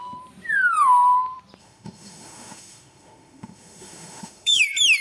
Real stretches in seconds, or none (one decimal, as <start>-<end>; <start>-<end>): 0.0-1.6; 4.6-5.0